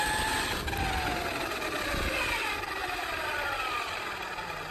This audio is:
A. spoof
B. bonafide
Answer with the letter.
B